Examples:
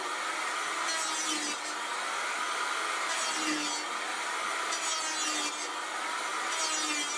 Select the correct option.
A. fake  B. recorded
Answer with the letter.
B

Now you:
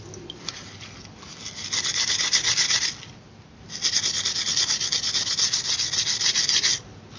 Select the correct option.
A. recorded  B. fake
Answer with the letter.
A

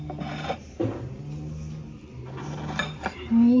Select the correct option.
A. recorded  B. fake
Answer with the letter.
A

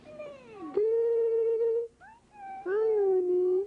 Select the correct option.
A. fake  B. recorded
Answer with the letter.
B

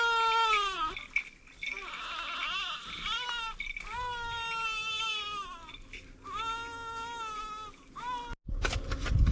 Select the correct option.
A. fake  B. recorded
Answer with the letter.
B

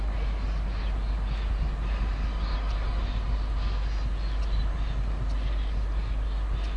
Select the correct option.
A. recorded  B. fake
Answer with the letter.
A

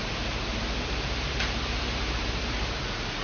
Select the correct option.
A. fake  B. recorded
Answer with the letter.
A